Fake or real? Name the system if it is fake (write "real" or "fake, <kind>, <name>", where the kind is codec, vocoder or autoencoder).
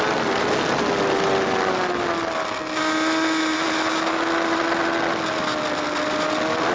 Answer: real